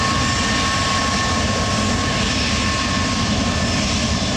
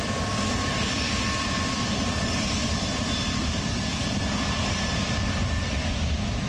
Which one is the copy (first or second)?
second